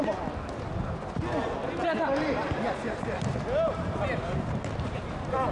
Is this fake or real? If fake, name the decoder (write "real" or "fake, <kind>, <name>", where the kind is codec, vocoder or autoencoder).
real